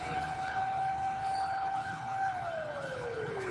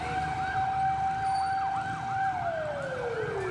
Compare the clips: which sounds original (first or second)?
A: second